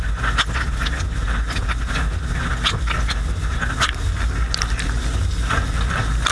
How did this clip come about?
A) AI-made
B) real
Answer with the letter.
B